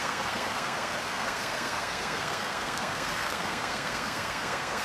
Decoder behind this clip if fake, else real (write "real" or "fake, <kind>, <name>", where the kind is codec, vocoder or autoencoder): fake, codec, SNAC